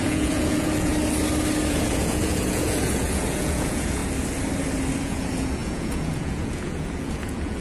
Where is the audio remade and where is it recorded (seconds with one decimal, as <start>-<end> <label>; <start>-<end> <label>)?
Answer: 0.0-0.9 remade; 0.9-1.7 recorded; 1.7-4.0 remade; 4.0-5.0 recorded; 5.0-7.6 remade